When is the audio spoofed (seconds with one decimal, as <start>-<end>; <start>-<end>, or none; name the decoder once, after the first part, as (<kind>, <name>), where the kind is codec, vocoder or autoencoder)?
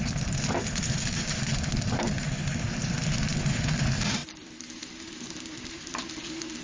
none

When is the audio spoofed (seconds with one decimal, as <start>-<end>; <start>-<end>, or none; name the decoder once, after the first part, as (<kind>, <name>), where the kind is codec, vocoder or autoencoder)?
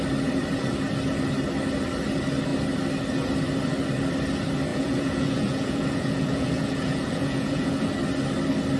4.7-7.9 (vocoder, Vocos)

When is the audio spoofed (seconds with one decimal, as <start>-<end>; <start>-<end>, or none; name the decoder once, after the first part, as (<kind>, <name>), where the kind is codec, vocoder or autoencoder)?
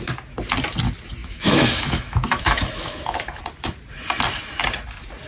1.2-3.4 (autoencoder, DAC-VAE)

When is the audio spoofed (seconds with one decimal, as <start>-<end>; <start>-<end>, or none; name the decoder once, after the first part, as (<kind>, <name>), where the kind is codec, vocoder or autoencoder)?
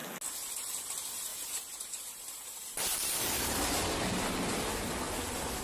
1.3-3.6 (vocoder, BigVGAN v2)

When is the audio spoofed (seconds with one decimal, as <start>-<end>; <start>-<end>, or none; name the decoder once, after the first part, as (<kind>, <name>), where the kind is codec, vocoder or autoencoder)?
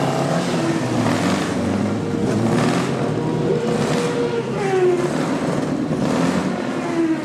none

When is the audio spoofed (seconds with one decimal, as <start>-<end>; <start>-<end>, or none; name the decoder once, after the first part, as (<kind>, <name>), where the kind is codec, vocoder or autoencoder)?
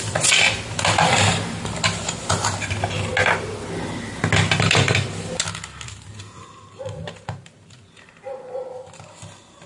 none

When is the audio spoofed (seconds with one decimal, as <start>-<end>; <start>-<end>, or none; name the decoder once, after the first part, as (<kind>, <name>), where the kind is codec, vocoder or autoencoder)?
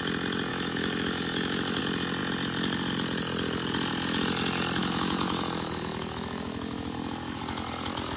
0.5-1.8 (autoencoder, DAC-VAE); 4.8-7.4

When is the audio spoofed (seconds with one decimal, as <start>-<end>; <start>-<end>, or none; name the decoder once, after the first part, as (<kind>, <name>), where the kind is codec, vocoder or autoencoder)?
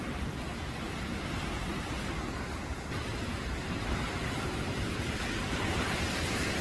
0.0-0.5 (vocoder, BigVGAN v2); 1.2-1.7; 3.5-6.6